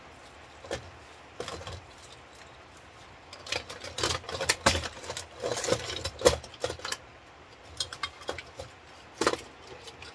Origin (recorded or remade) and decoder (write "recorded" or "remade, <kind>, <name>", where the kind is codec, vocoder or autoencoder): recorded